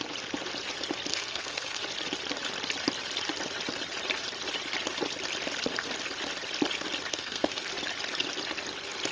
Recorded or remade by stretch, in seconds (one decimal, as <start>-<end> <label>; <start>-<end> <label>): 0.0-1.1 recorded; 1.1-1.8 remade; 1.8-7.1 recorded; 7.1-7.7 remade; 7.7-9.1 recorded